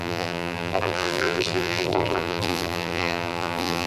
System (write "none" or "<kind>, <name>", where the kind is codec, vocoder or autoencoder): vocoder, BigVGAN v2